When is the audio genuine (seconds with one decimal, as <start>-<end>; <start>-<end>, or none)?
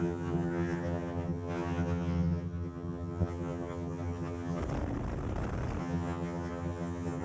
4.6-5.8